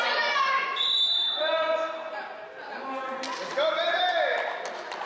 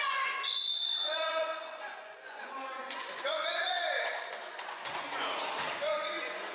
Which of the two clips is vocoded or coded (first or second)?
second